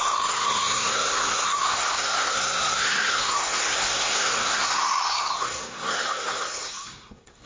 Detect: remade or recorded remade